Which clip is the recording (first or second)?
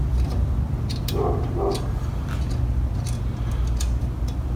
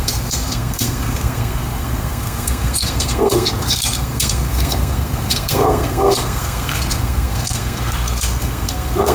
first